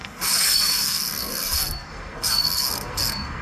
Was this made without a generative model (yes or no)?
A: no